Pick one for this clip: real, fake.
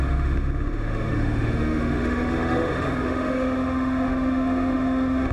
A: fake